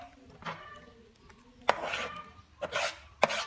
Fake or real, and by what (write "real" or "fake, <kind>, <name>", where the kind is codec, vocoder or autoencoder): real